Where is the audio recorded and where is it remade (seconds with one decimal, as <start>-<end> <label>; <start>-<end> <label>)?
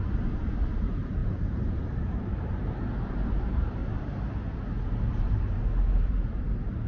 0.0-3.8 remade; 3.8-5.1 recorded; 5.1-6.9 remade